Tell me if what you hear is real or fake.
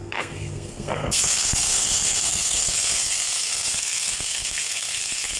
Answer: fake